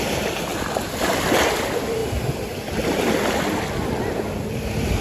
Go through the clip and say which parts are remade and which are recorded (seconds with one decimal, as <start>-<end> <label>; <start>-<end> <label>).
0.0-5.0 recorded